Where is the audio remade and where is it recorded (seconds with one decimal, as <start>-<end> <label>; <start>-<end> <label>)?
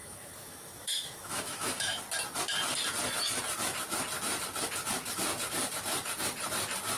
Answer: 0.0-2.0 remade; 2.0-7.0 recorded